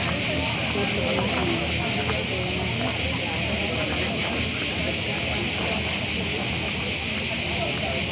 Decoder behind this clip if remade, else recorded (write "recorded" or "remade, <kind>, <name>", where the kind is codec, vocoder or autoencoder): recorded